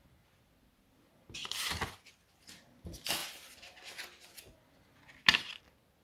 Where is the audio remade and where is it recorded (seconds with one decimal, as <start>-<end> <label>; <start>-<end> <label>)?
0.0-6.0 recorded